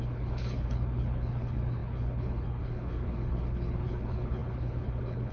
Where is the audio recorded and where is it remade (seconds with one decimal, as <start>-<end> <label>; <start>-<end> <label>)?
0.0-5.3 remade